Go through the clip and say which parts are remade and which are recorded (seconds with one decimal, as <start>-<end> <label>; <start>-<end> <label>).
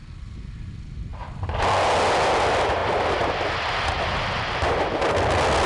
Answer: 0.0-5.7 recorded